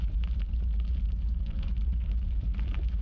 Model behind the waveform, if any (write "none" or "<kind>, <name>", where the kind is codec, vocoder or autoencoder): none